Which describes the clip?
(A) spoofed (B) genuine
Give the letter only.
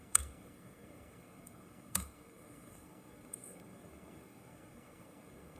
A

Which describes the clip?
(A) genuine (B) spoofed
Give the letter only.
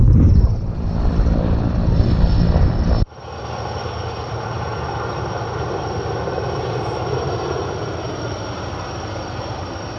A